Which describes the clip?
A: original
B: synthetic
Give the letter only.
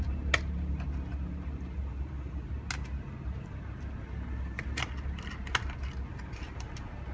A